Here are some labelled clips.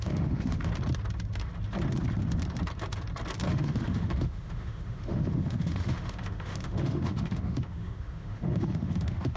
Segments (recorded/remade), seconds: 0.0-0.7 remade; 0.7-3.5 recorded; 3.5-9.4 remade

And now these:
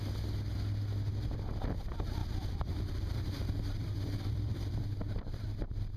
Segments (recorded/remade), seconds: 0.0-2.2 recorded; 2.2-6.0 remade

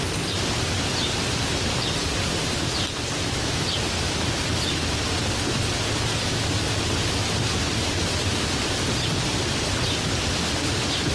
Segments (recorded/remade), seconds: 0.0-11.1 recorded

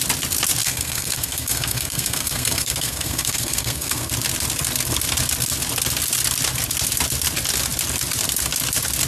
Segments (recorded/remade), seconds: 0.0-0.6 recorded; 0.6-4.1 remade; 4.1-9.1 recorded

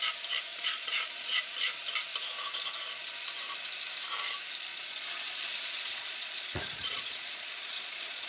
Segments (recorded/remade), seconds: 0.0-0.5 recorded; 0.5-1.4 remade; 1.4-4.7 recorded; 4.7-8.3 remade

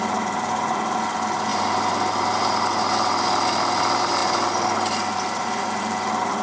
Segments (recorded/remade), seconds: 0.0-6.4 recorded

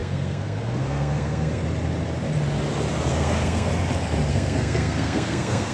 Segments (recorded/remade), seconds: 0.0-1.6 remade; 1.6-3.1 recorded; 3.1-3.7 remade; 3.7-4.3 recorded; 4.3-5.7 remade